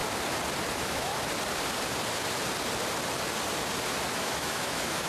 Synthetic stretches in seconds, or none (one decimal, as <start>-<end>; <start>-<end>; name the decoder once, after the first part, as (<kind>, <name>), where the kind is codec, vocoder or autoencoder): 0.7-1.1 (autoencoder, DAC-VAE); 4.2-5.1